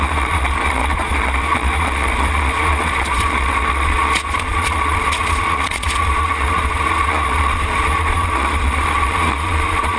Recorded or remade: remade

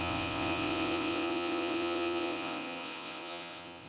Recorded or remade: remade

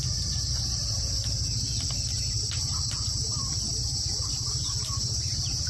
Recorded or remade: remade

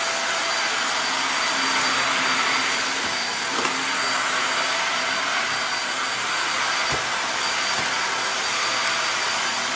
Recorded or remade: recorded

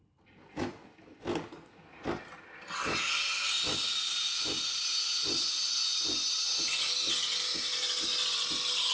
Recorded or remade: recorded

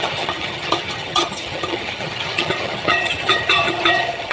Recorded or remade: remade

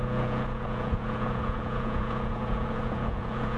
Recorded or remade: remade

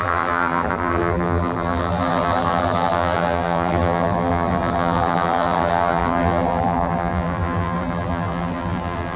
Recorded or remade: remade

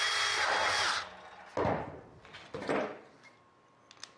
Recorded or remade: recorded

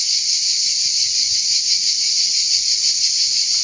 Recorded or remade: recorded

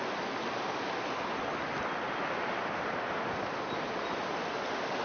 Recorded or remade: recorded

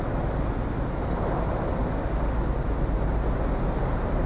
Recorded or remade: recorded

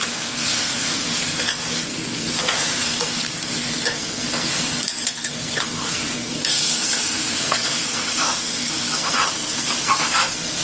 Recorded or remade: remade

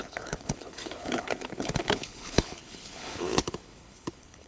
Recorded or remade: remade